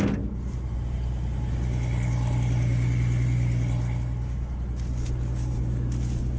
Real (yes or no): yes